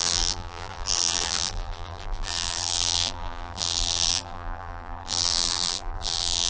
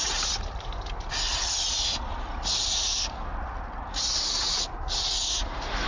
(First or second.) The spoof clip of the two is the first